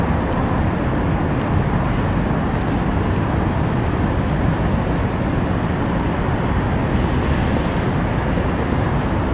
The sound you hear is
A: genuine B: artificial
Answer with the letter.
A